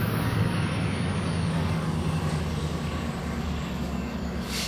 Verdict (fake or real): fake